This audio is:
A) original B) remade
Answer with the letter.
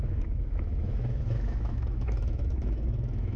B